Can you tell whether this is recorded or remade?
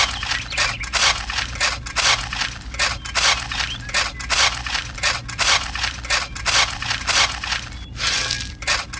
recorded